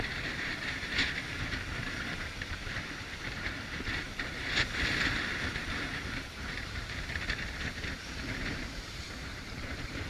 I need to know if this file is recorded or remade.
remade